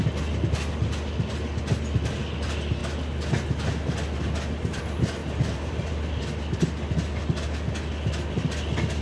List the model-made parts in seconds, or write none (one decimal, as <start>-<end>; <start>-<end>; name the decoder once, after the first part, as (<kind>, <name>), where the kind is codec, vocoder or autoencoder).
5.2-6.2 (vocoder, BigVGAN v2)